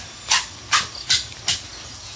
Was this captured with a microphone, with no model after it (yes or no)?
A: yes